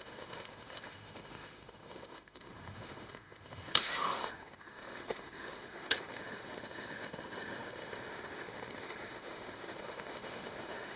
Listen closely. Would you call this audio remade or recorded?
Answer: remade